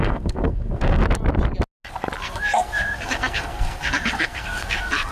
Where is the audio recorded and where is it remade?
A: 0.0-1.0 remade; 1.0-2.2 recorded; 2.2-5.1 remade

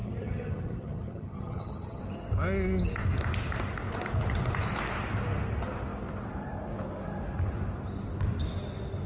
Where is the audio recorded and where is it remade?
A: 0.0-2.0 remade; 2.0-9.1 recorded

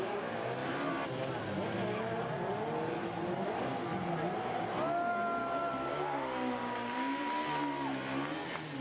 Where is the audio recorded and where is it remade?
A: 0.0-5.4 recorded; 5.4-7.2 remade; 7.2-8.8 recorded